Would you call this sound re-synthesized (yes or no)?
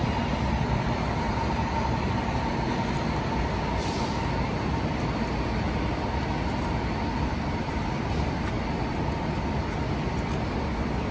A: no